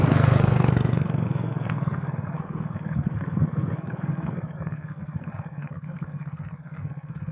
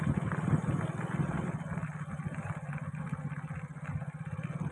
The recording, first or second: second